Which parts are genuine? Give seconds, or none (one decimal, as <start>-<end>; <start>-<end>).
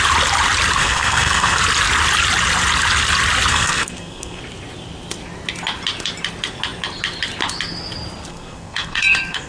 0.0-0.8; 1.6-3.5; 4.4-8.3